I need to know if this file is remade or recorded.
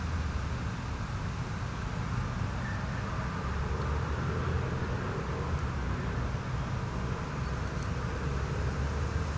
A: recorded